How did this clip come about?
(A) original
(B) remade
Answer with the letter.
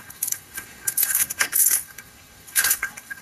B